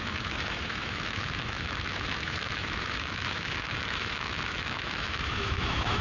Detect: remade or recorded remade